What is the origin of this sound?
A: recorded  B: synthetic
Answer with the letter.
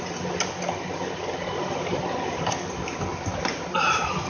A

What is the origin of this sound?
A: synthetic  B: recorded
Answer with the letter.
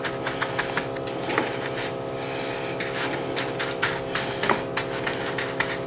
B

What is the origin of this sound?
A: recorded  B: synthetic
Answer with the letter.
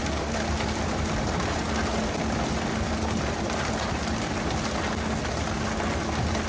A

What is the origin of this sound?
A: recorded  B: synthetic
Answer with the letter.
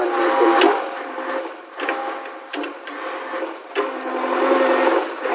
A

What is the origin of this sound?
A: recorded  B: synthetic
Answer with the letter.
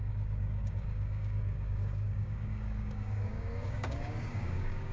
B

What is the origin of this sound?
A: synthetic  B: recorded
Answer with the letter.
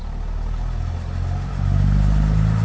B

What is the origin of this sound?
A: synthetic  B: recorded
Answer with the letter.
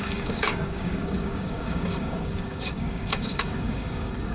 A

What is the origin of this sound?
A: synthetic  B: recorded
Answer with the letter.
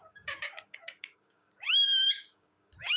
A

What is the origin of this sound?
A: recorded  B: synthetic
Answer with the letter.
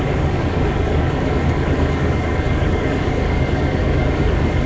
B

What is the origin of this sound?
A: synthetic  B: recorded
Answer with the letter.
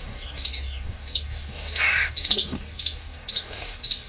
A